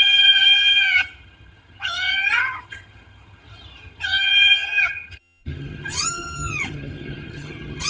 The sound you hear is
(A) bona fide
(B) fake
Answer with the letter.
B